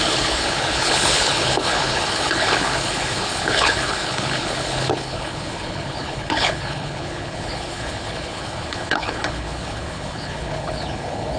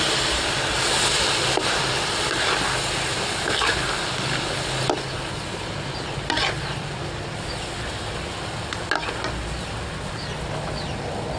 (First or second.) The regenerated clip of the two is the first